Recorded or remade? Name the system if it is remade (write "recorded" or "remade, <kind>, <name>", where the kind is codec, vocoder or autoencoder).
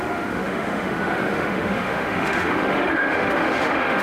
remade, autoencoder, DAC-VAE